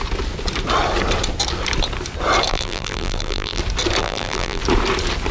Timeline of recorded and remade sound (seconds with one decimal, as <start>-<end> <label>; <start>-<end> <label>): 0.0-2.5 recorded; 2.5-3.6 remade; 3.6-4.0 recorded; 4.0-4.6 remade; 4.6-5.3 recorded